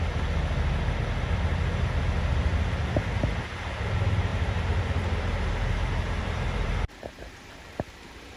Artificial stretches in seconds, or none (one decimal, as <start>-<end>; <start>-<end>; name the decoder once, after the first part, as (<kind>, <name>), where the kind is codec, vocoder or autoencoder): 4.3-7.7 (vocoder, BigVGAN v2)